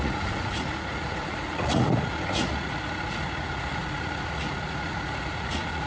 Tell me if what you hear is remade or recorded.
remade